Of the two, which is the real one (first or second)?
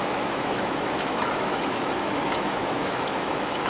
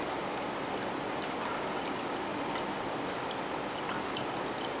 second